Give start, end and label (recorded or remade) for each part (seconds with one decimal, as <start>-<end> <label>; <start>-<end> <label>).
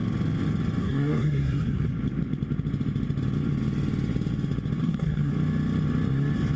0.0-0.8 recorded; 0.8-1.9 remade; 1.9-4.8 recorded; 4.8-5.3 remade; 5.3-6.6 recorded